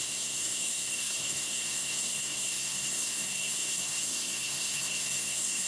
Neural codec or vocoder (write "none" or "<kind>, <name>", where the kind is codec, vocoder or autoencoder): codec, SNAC